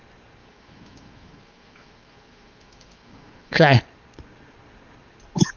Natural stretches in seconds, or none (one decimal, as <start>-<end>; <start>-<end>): 0.0-0.4; 3.8-5.6